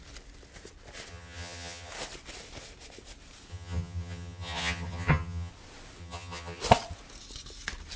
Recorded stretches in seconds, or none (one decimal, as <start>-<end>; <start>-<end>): 0.0-1.1; 1.9-3.5; 5.5-6.0; 6.6-8.0